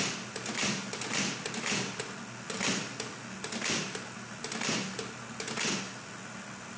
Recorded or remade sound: recorded